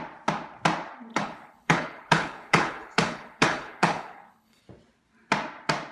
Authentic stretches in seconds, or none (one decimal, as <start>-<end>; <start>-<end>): 0.0-1.1; 4.6-5.9